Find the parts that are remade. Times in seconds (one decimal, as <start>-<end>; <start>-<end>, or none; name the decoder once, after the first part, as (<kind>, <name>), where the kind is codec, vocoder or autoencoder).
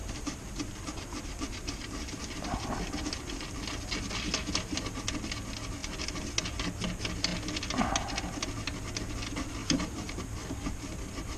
0.0-2.2 (vocoder, BigVGAN v2); 9.6-10.2